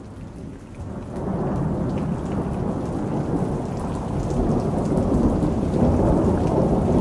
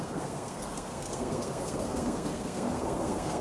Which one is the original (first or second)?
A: first